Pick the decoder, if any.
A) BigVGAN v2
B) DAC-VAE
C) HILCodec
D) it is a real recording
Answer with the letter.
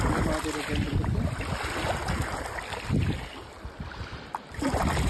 D